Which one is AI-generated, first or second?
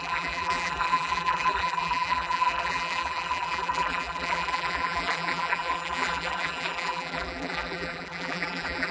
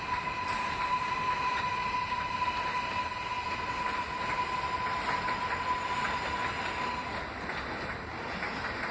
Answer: first